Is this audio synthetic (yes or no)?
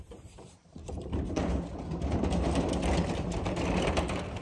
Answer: yes